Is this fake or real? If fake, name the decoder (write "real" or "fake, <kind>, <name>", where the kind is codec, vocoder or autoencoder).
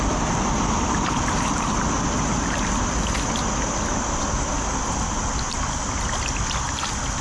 real